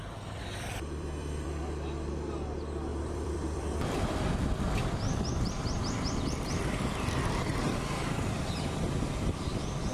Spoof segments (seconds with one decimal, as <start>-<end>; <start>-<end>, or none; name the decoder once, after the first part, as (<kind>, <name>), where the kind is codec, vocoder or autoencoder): 0.0-1.6 (vocoder, BigVGAN v2); 2.9-5.8